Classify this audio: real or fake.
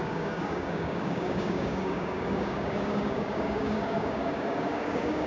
fake